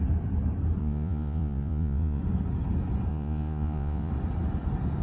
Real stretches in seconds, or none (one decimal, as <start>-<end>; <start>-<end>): 0.0-0.8; 2.2-3.1; 4.1-5.0

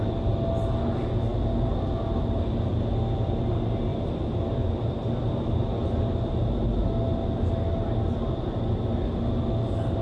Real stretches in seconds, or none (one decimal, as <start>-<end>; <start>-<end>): 0.0-10.0

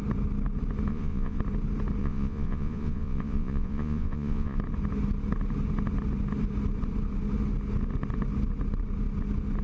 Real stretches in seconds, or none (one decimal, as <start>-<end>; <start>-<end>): 0.0-0.9; 1.4-2.0; 4.6-9.6

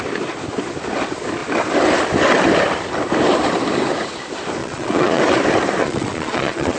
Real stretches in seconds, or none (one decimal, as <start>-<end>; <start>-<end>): 0.0-4.6; 5.2-5.8

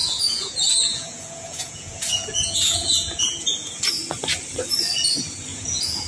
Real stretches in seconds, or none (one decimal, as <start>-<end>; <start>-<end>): 3.7-5.5